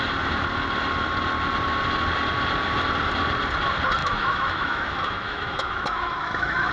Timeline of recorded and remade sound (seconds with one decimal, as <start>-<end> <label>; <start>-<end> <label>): 0.0-4.0 recorded; 4.0-6.7 remade